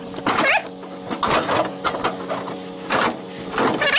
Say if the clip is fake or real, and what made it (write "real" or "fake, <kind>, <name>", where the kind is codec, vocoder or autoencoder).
real